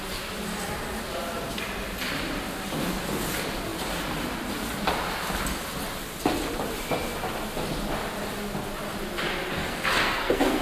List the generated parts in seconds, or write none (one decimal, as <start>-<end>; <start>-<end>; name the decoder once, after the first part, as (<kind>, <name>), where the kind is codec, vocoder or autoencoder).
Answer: 9.6-10.6 (codec, SNAC)